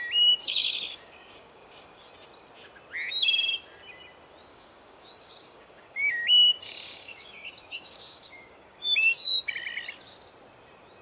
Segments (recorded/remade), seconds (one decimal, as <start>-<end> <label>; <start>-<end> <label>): 0.0-0.4 recorded; 0.4-2.1 remade; 2.1-4.5 recorded; 4.5-9.5 remade; 9.5-11.0 recorded